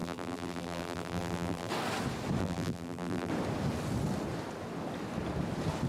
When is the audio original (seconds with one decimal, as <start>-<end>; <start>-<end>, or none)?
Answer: 1.7-2.4; 3.3-5.9